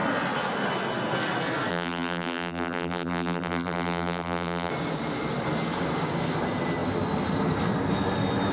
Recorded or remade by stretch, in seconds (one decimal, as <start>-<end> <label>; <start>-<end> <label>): 0.0-1.7 recorded; 1.7-4.7 remade; 4.7-8.5 recorded